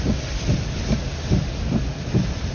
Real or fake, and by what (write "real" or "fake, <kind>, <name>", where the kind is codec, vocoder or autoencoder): real